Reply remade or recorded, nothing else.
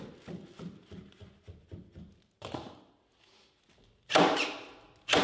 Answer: recorded